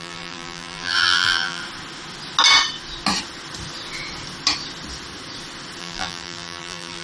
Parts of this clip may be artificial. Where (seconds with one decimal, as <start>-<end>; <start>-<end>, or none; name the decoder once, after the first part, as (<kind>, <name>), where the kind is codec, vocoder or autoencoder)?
0.0-1.6 (vocoder, BigVGAN v2); 5.8-7.0